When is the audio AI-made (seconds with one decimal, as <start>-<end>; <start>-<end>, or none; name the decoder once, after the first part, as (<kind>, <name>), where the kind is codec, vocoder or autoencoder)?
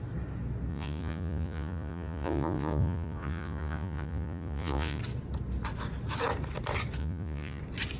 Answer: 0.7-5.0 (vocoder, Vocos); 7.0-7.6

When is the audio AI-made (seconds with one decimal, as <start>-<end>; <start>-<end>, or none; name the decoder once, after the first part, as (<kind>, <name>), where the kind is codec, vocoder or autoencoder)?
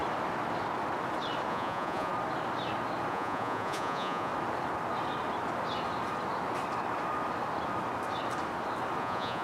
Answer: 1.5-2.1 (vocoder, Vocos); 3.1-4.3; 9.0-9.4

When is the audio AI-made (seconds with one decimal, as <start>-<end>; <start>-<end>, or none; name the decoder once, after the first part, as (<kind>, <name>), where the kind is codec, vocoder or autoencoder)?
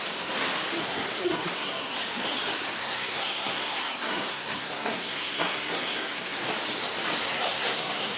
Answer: 0.8-1.9 (codec, SNAC); 2.8-6.4; 7.2-8.2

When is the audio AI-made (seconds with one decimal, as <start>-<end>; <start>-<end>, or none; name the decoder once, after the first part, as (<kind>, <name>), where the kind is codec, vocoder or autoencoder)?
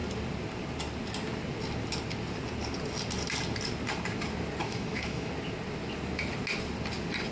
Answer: 4.6-5.3 (autoencoder, DAC-VAE)